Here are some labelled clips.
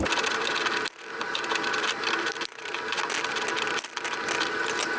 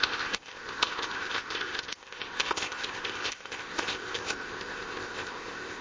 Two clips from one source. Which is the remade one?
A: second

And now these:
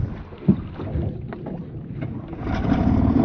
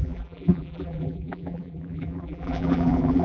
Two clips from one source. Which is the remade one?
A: second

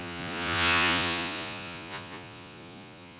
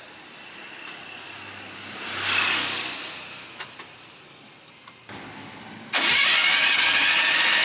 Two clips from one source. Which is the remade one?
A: first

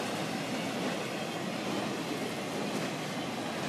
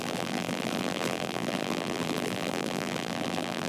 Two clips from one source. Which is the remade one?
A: second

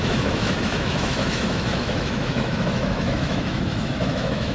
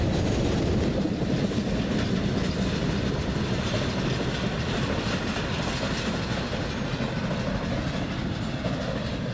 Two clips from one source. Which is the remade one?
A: first